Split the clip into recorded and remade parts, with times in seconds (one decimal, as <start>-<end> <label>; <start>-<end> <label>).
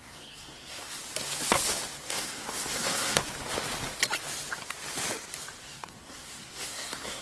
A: 0.0-1.0 remade; 1.0-2.0 recorded; 2.0-3.2 remade; 3.2-5.6 recorded; 5.6-7.2 remade